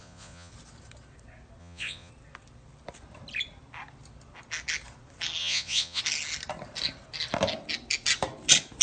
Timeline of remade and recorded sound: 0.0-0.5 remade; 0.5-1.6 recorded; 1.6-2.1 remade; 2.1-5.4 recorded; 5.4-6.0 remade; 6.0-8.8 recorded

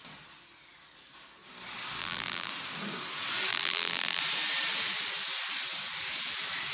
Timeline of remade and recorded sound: 0.0-2.0 recorded; 2.0-2.5 remade; 2.5-3.5 recorded; 3.5-4.2 remade; 4.2-6.7 recorded

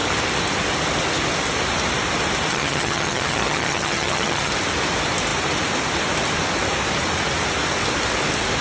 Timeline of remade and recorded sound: 0.0-2.5 recorded; 2.5-4.5 remade; 4.5-8.6 recorded